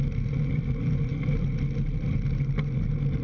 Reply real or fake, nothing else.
real